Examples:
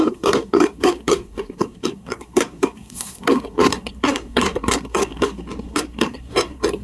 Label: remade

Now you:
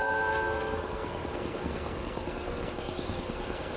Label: remade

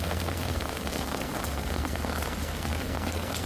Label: remade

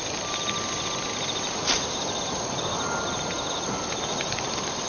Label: recorded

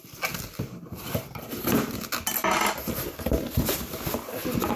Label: recorded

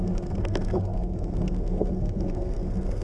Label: remade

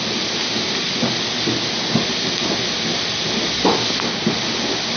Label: recorded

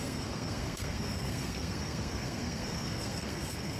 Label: remade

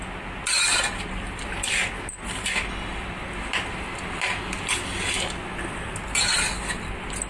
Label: recorded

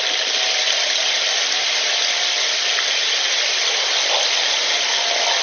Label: recorded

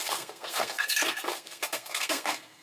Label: remade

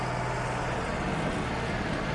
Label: recorded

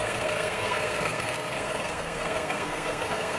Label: remade